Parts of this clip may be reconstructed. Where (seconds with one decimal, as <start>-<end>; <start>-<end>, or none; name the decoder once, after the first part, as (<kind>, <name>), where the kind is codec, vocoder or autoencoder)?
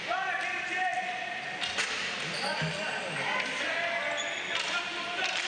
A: none